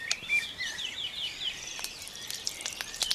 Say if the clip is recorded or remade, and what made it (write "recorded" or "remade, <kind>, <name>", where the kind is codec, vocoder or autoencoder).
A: remade, vocoder, BigVGAN v2